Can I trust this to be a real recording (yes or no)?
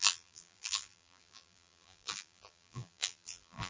no